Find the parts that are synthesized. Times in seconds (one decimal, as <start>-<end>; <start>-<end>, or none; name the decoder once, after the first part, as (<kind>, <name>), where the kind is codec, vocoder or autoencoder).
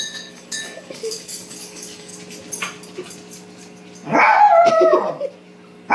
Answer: 0.0-2.1 (codec, DAC)